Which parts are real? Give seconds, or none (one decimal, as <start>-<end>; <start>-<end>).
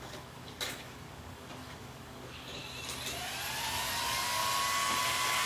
2.6-4.0; 4.4-5.0